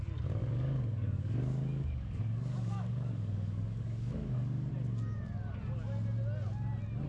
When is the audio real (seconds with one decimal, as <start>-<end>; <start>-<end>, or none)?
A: 0.0-0.4; 4.7-7.1